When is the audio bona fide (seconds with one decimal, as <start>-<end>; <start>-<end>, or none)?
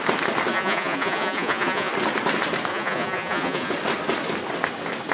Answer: 0.0-0.5; 1.9-2.7; 3.7-5.1